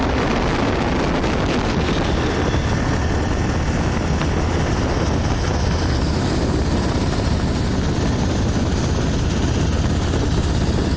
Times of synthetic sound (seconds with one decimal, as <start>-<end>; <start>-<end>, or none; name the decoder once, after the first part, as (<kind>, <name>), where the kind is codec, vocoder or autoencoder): none